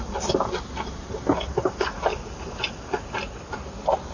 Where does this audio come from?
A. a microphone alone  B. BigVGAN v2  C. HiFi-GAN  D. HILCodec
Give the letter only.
A